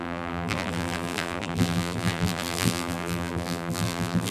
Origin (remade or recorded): remade